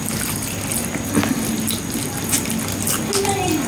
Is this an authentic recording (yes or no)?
yes